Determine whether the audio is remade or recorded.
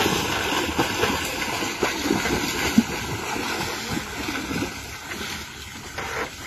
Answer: recorded